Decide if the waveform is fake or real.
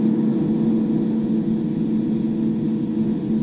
real